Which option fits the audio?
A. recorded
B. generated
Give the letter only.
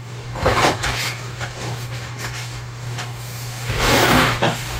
B